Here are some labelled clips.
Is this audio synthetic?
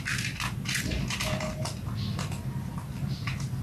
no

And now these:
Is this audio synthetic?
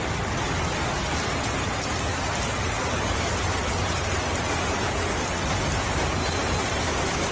no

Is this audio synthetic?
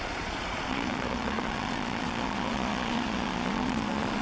yes